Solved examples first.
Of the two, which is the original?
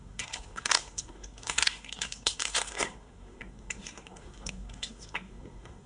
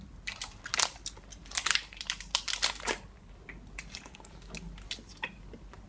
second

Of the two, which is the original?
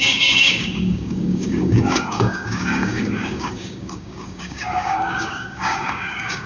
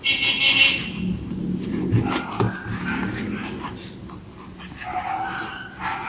second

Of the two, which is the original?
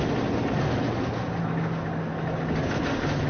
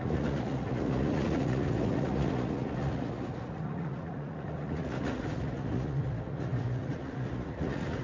first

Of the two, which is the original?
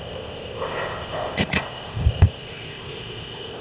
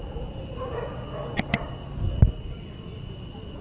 second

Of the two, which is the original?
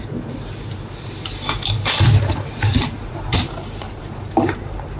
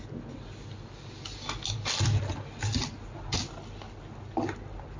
second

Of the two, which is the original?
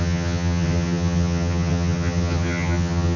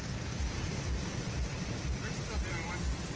second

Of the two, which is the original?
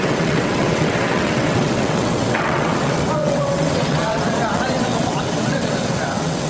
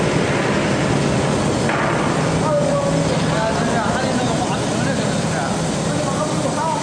second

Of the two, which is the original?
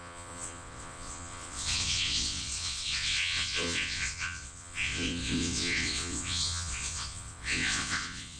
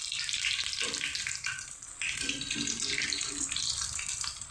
second